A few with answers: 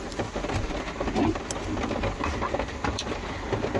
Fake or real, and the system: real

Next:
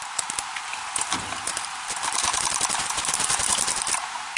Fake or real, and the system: fake, vocoder, BigVGAN v2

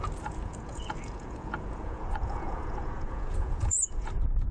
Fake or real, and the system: fake, vocoder, Vocos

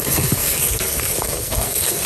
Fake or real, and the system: fake, codec, SNAC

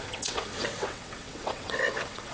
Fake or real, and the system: fake, vocoder, WaveNeXt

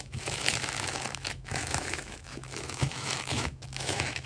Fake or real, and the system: fake, autoencoder, DAC-VAE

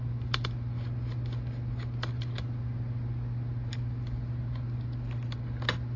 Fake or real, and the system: real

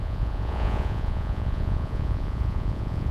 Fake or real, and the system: fake, vocoder, Vocos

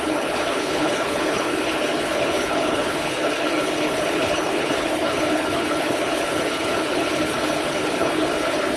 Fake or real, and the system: fake, codec, HILCodec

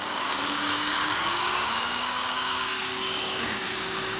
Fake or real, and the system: fake, codec, DAC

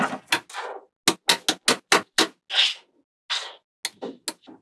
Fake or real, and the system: real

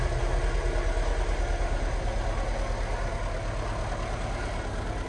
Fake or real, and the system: real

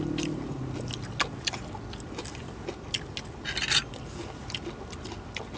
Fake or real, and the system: real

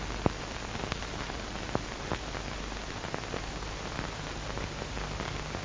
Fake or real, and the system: real